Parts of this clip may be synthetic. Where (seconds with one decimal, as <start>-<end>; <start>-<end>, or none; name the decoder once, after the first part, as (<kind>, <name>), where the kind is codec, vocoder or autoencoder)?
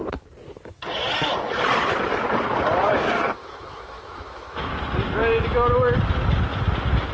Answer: 3.4-4.7 (autoencoder, DAC-VAE)